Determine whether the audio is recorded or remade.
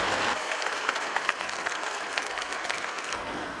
remade